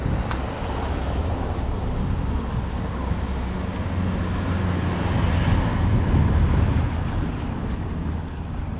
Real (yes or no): yes